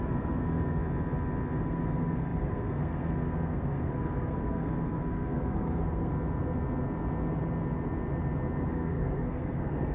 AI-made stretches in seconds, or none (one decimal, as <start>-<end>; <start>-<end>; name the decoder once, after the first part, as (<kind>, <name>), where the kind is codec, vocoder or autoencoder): 0.0-0.8 (codec, SNAC); 1.6-6.1; 8.7-9.9